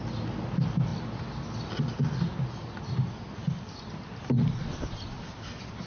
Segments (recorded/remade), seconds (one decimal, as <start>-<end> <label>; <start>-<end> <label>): 0.0-5.9 recorded

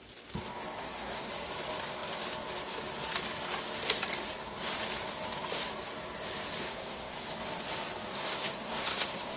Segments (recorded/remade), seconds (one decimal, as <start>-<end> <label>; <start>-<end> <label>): 0.0-0.8 recorded; 0.8-1.3 remade; 1.3-6.6 recorded; 6.6-7.3 remade; 7.3-8.1 recorded; 8.1-9.4 remade

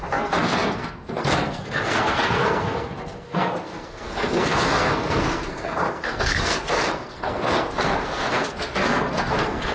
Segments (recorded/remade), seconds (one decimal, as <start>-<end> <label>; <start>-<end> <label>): 0.0-9.7 remade

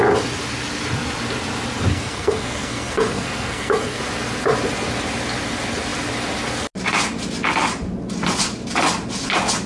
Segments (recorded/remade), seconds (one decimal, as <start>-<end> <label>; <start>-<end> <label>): 0.0-1.9 recorded; 1.9-4.0 remade; 4.0-9.7 recorded